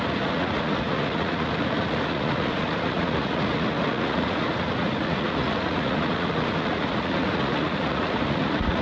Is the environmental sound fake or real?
fake